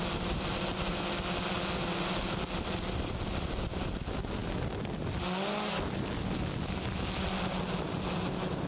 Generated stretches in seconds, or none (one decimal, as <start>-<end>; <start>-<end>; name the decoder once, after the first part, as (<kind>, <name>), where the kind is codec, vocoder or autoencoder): none